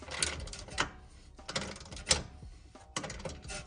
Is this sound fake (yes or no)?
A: no